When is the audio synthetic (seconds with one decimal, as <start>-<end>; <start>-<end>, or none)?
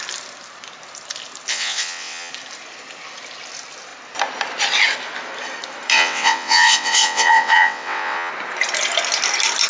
1.5-2.3; 5.9-8.3